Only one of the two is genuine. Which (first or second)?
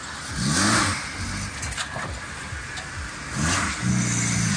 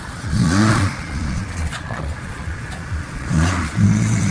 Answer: first